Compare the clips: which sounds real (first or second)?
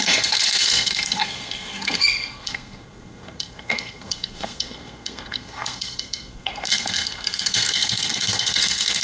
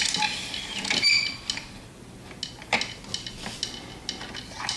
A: second